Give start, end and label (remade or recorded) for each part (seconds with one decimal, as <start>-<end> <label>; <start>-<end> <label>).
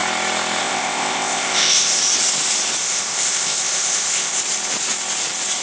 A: 0.0-0.6 recorded; 0.6-2.0 remade; 2.0-2.8 recorded; 2.8-4.4 remade; 4.4-5.6 recorded